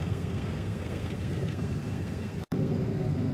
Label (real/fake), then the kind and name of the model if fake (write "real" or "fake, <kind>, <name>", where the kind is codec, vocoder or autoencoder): fake, codec, SNAC